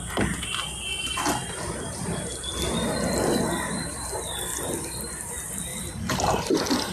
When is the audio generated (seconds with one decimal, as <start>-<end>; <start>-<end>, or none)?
0.0-4.5; 5.2-6.9

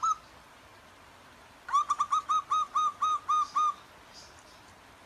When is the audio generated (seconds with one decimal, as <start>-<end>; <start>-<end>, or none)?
0.0-2.9; 4.2-5.1

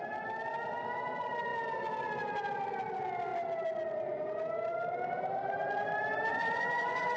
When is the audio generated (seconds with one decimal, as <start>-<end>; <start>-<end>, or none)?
6.3-7.2

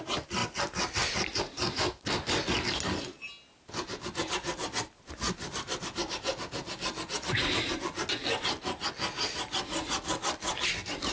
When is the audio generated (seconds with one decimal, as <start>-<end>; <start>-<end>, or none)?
none

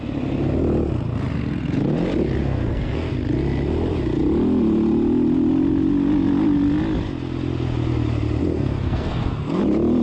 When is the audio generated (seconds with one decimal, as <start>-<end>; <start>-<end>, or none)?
2.4-3.1; 8.4-9.6

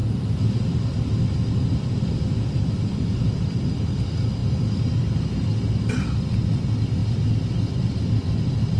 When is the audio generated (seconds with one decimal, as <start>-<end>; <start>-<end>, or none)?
7.0-8.1